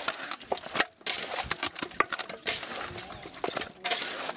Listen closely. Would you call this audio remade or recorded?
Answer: recorded